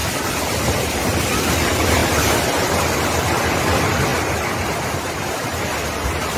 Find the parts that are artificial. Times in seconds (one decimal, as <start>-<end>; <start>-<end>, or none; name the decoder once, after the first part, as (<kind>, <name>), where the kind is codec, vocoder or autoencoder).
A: none